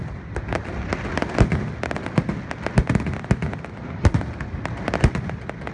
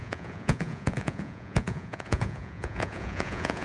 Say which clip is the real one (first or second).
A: first